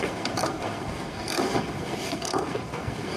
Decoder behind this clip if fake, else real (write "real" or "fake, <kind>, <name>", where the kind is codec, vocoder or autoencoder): fake, codec, SNAC